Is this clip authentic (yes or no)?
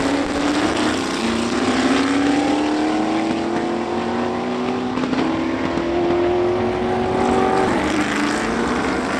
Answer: yes